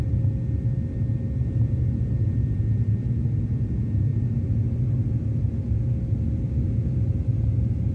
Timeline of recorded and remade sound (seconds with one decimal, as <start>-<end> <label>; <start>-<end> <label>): 0.0-7.9 recorded